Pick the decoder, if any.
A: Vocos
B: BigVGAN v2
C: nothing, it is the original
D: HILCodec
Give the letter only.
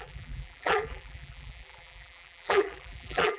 B